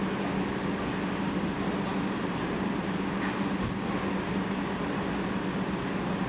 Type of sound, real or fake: real